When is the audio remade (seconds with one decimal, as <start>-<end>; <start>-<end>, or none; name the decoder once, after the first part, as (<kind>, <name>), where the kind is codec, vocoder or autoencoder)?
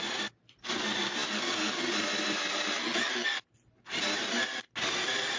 none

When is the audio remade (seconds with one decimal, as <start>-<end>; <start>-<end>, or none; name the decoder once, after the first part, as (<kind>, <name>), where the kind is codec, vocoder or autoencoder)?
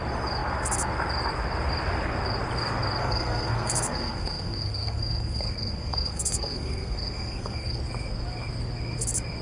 3.0-7.8 (codec, SNAC)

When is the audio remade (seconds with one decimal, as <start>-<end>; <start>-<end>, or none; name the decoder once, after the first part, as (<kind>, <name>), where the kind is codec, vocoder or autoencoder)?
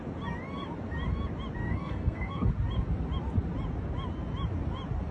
1.6-2.5 (codec, SNAC)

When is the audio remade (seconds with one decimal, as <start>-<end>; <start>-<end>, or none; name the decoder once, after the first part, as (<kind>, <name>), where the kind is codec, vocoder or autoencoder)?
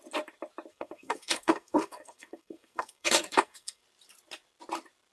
0.7-3.8 (codec, SNAC)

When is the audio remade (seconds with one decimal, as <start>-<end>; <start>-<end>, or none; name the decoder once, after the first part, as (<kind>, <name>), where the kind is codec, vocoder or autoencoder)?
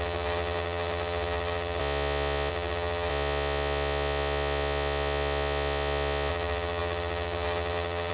0.0-1.8 (vocoder, BigVGAN v2); 2.5-3.1; 6.3-8.1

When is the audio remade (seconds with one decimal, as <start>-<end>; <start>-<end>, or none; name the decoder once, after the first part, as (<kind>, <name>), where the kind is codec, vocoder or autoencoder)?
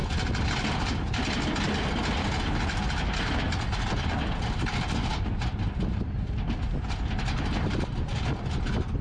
none